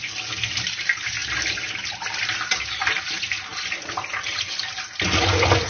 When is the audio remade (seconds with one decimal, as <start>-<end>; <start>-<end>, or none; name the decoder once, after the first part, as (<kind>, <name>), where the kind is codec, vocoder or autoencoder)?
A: none